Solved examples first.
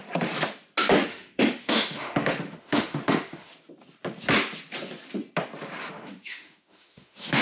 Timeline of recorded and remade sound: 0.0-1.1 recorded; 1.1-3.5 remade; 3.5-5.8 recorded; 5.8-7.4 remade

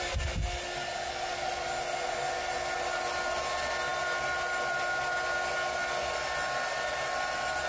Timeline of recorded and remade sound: 0.0-7.7 recorded